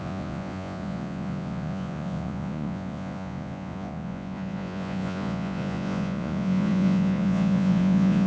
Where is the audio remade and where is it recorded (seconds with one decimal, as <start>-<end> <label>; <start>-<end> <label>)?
0.0-8.3 remade